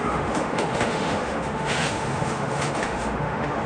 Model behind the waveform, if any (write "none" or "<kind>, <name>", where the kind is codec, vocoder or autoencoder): autoencoder, DAC-VAE